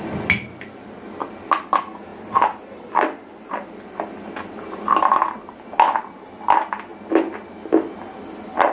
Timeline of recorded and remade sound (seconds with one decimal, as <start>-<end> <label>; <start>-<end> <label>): 0.0-8.7 recorded